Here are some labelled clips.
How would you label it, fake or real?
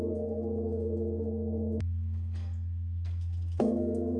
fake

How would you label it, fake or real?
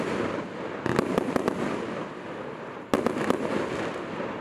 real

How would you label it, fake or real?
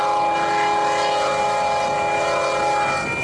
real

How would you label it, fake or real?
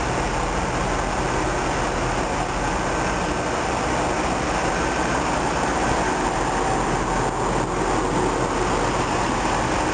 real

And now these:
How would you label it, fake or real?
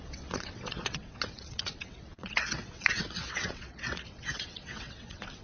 fake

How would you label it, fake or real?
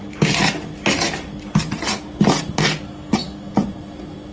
real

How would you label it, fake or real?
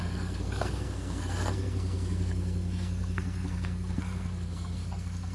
fake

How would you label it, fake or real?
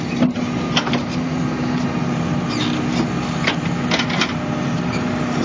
real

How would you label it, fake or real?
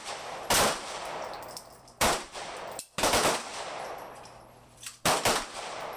fake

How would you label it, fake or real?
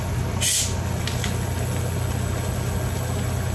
real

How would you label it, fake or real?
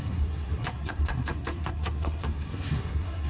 fake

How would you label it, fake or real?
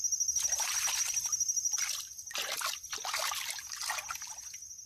real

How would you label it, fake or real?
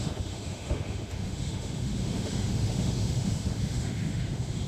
fake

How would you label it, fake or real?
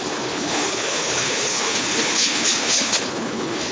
fake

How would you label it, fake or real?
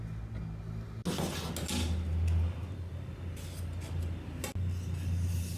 real